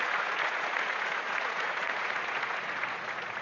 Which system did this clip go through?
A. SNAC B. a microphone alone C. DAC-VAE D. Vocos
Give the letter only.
D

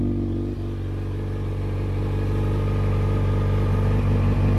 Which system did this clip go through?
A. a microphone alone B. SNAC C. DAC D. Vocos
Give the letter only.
A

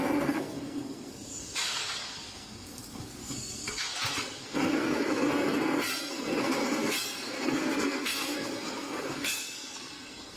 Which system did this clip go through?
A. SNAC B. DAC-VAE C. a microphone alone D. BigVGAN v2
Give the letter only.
A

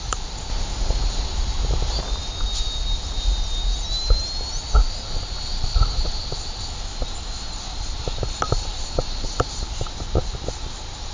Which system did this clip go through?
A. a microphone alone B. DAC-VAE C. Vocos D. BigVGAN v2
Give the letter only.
A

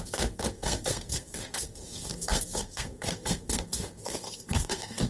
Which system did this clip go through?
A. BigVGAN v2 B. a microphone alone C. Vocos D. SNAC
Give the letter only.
D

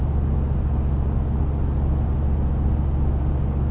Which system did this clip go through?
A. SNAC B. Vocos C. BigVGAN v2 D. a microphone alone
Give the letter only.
D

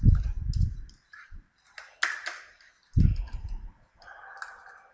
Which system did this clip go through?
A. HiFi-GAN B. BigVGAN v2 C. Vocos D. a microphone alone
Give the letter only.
D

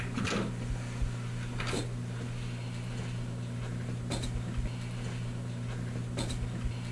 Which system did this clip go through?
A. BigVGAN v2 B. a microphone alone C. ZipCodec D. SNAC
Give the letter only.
B